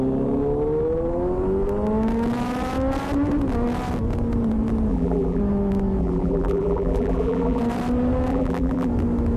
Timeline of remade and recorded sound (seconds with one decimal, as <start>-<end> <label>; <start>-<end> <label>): 0.0-4.9 recorded; 4.9-5.4 remade; 5.4-6.0 recorded; 6.0-7.6 remade; 7.6-8.3 recorded; 8.3-8.9 remade; 8.9-9.4 recorded